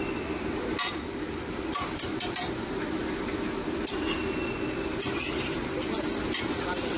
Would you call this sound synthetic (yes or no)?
no